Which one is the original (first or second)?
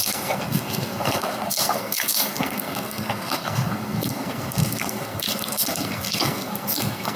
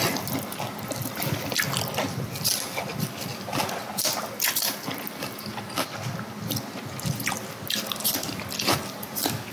second